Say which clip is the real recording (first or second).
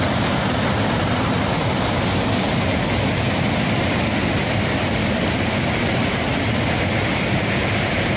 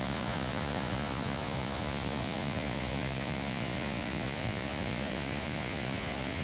first